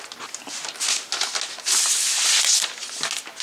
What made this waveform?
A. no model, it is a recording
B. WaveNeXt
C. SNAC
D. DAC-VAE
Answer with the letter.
A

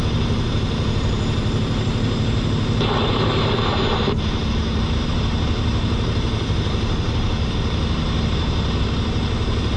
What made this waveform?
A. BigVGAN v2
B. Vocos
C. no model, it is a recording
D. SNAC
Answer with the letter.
A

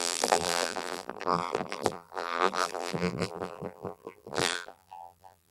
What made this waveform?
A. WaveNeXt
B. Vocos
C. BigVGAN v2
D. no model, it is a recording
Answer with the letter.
C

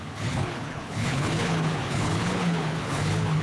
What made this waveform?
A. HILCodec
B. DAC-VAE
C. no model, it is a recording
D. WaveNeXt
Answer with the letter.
A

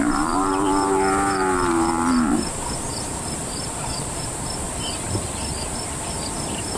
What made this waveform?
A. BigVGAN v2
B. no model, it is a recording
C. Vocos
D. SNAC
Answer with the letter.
A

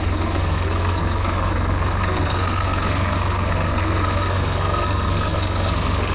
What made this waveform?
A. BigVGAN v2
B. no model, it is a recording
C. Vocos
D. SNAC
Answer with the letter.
D